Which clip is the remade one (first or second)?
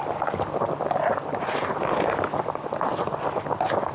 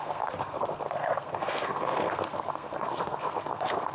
second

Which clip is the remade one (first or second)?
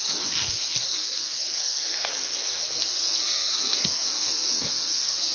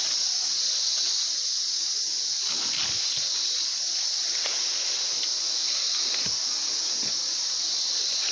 first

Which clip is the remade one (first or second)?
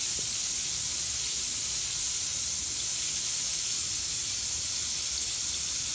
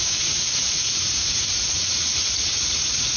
second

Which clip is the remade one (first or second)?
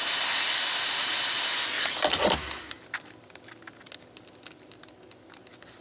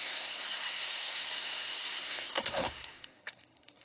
second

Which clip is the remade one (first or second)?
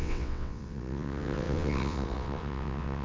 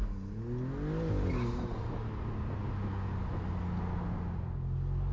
first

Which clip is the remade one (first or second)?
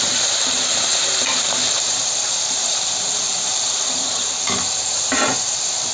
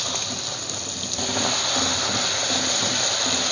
first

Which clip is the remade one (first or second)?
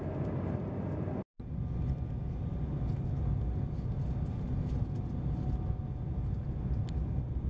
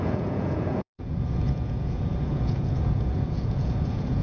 second